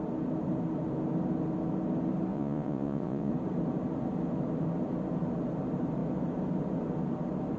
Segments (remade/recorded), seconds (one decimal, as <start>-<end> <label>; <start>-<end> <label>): 0.0-2.3 recorded; 2.3-3.3 remade; 3.3-7.6 recorded

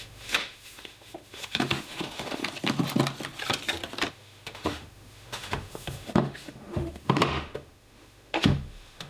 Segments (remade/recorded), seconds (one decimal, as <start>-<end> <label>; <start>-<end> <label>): 0.0-2.4 remade; 2.4-4.1 recorded; 4.1-9.1 remade

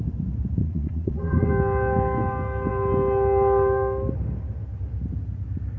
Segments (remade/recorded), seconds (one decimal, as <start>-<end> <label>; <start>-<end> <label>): 0.0-0.6 recorded; 0.6-1.5 remade; 1.5-5.8 recorded

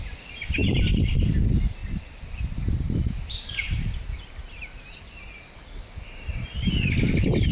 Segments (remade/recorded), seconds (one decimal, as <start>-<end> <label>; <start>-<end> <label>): 0.0-0.6 recorded; 0.6-1.3 remade; 1.3-1.8 recorded; 1.8-5.2 remade; 5.2-7.5 recorded

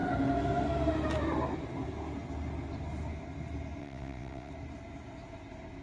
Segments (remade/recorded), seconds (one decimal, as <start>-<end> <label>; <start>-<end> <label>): 0.0-3.8 recorded; 3.8-4.5 remade; 4.5-5.8 recorded

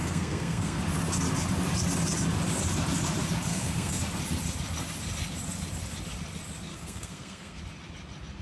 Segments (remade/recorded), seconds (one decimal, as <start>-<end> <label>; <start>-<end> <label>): 0.0-0.8 remade; 0.8-3.5 recorded; 3.5-4.0 remade; 4.0-6.7 recorded; 6.7-7.6 remade; 7.6-8.4 recorded

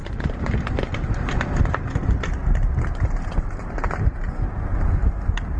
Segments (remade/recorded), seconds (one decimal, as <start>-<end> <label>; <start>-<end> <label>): 0.0-1.9 remade; 1.9-5.6 recorded

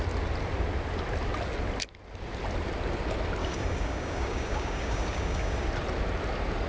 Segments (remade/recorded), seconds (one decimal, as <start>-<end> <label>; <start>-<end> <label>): 0.0-3.4 recorded; 3.4-5.7 remade; 5.7-6.7 recorded